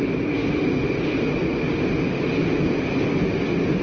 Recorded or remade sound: recorded